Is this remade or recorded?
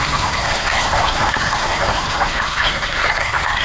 remade